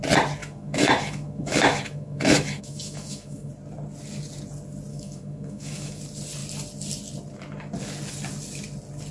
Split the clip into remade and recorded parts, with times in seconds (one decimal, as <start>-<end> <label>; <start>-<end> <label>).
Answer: 0.0-0.4 recorded; 0.4-3.5 remade; 3.5-4.9 recorded; 4.9-6.0 remade; 6.0-9.1 recorded